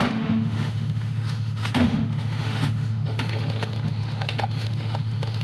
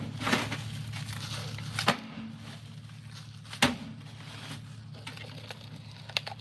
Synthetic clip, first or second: first